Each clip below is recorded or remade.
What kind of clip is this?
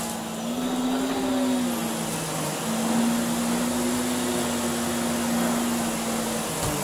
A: recorded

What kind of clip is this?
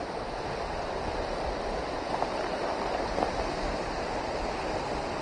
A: recorded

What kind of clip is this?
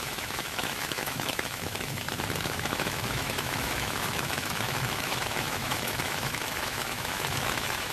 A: remade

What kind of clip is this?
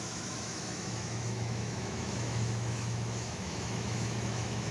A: remade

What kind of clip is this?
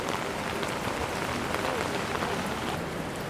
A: recorded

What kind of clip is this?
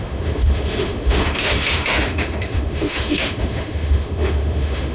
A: remade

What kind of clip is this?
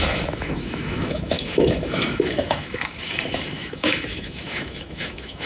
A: remade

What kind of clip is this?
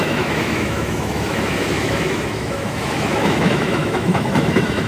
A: remade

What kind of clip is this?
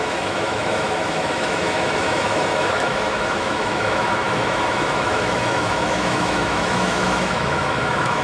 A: remade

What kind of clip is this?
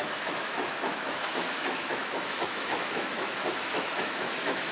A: remade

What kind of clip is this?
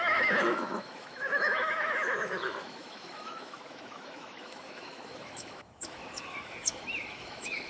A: remade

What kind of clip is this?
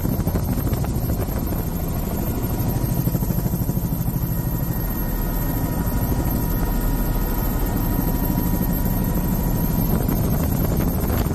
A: recorded